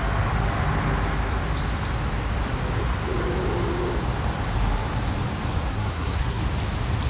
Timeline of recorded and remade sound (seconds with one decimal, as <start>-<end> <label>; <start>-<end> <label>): 0.0-5.7 recorded; 5.7-6.4 remade; 6.4-7.1 recorded